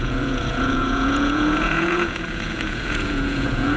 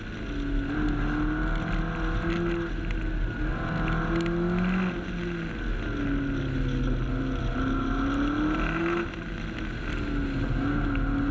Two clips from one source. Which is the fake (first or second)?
first